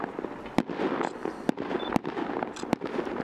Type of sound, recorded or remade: recorded